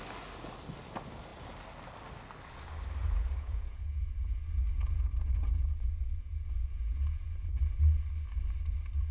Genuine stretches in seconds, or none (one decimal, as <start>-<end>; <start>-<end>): 0.0-3.0; 7.6-9.1